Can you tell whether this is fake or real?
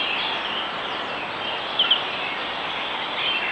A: real